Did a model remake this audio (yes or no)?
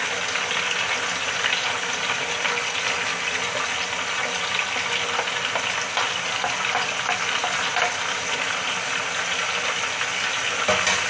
no